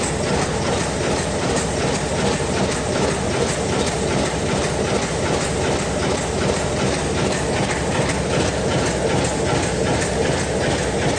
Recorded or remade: recorded